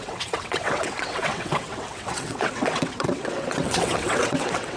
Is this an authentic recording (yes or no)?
no